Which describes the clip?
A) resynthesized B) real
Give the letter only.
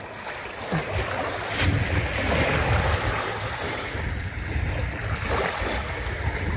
B